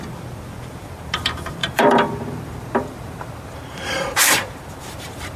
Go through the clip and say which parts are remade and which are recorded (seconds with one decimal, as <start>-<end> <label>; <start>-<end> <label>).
0.0-5.4 remade